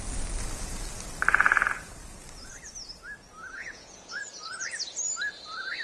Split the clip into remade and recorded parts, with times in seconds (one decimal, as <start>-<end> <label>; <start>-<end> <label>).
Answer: 0.0-3.6 recorded; 3.6-4.2 remade; 4.2-5.8 recorded